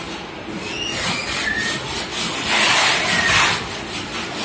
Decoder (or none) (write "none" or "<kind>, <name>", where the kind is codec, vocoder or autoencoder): none